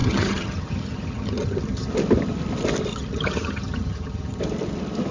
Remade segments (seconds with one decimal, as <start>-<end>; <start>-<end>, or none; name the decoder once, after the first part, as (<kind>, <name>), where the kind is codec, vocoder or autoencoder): 0.0-1.9 (vocoder, HiFi-GAN); 2.9-4.4

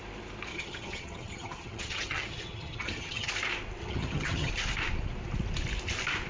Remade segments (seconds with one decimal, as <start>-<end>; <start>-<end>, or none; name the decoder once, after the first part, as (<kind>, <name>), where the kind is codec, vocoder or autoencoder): 0.5-3.3 (vocoder, HiFi-GAN); 3.8-4.5

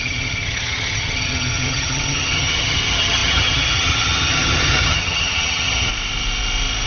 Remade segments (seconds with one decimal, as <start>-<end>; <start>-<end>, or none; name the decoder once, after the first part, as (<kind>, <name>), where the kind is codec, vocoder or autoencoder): 0.0-5.9 (vocoder, HiFi-GAN)

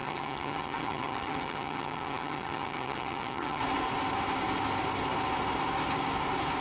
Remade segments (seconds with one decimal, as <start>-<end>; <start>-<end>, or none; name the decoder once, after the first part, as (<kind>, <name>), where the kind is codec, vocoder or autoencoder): 0.0-3.6 (vocoder, HiFi-GAN)

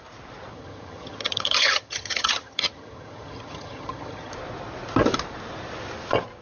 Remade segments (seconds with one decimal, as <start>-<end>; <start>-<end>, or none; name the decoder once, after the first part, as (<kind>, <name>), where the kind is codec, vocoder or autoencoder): 0.5-4.3 (vocoder, HiFi-GAN)

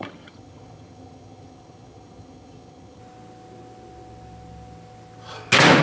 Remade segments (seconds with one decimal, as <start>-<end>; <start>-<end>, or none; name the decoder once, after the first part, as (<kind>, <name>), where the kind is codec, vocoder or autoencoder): 0.0-3.0 (vocoder, HiFi-GAN)